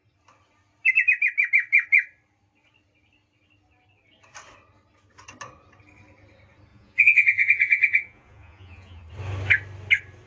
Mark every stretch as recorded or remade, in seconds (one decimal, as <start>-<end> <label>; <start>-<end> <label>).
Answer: 0.0-6.7 recorded; 6.7-9.0 remade; 9.0-10.3 recorded

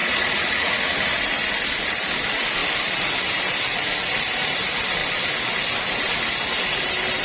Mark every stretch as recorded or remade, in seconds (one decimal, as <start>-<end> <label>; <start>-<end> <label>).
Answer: 0.0-0.9 remade; 0.9-7.2 recorded

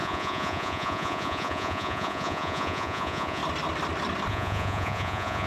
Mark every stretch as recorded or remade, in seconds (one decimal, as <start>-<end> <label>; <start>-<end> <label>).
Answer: 0.0-3.4 remade; 3.4-4.3 recorded; 4.3-5.5 remade

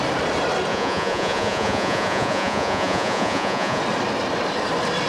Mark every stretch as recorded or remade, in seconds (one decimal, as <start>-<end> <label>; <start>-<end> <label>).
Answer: 0.0-0.7 recorded; 0.7-3.8 remade; 3.8-5.1 recorded

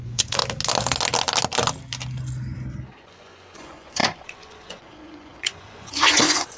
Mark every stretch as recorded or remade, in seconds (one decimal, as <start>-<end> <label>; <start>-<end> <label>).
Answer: 0.0-0.4 remade; 0.4-3.0 recorded; 3.0-6.6 remade

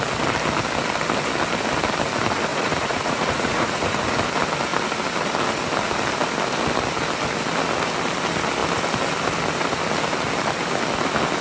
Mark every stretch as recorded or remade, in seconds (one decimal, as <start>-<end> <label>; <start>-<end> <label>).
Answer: 0.0-2.5 recorded; 2.5-4.0 remade; 4.0-11.4 recorded